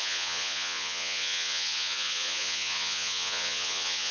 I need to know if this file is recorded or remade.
remade